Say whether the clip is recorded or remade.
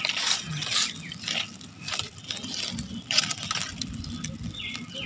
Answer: recorded